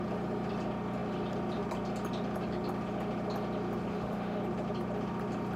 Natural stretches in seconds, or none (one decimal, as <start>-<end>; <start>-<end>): 0.0-3.9; 4.4-5.6